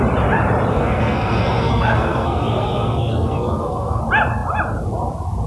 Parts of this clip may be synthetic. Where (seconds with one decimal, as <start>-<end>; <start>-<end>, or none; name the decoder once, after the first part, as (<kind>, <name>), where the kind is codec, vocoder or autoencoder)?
0.7-4.0 (codec, SNAC)